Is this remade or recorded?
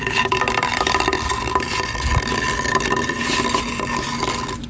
recorded